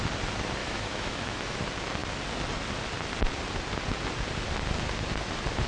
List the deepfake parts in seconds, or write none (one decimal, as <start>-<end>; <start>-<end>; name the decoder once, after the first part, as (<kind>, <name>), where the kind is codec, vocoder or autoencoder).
0.6-1.6 (autoencoder, DAC-VAE)